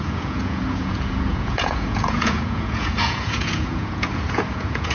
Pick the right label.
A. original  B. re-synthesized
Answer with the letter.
B